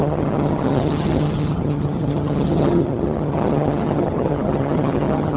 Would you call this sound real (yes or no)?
no